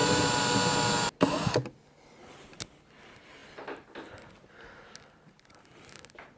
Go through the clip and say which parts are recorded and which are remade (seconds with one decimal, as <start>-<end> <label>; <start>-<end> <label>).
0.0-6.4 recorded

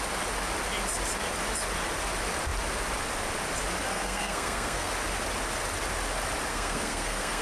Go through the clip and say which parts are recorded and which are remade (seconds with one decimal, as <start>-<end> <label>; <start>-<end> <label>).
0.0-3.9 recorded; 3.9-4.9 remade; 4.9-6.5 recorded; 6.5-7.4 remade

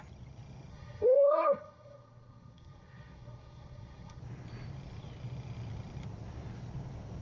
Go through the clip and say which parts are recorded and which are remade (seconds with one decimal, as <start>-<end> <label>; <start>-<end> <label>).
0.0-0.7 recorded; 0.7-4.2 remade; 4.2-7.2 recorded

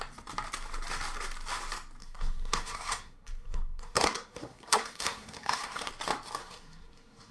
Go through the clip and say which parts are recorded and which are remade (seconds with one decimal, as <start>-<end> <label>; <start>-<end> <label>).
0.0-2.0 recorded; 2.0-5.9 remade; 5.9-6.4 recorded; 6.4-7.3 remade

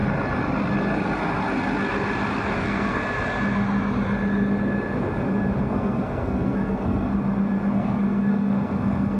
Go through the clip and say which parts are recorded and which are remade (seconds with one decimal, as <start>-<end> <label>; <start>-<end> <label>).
0.0-2.6 recorded; 2.6-3.0 remade; 3.0-5.6 recorded; 5.6-7.1 remade; 7.1-7.7 recorded; 7.7-9.2 remade

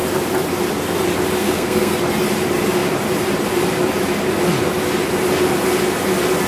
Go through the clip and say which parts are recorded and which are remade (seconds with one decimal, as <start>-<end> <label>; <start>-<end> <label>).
0.0-1.4 recorded; 1.4-2.0 remade; 2.0-6.5 recorded

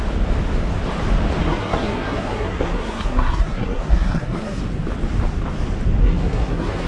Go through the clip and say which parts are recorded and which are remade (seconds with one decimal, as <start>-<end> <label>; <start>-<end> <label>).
0.0-1.4 recorded; 1.4-4.6 remade; 4.6-6.0 recorded; 6.0-6.9 remade